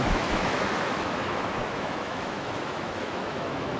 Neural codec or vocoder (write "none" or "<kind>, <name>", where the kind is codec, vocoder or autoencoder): autoencoder, DAC-VAE